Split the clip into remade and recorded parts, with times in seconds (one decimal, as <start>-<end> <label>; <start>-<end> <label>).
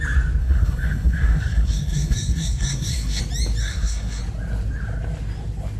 0.0-0.4 recorded; 0.4-3.2 remade; 3.2-3.6 recorded; 3.6-4.2 remade; 4.2-5.8 recorded